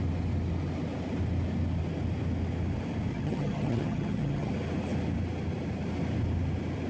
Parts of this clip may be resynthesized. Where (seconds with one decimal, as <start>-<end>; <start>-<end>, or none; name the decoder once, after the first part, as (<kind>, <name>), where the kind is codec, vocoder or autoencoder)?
3.1-4.5 (vocoder, HiFi-GAN)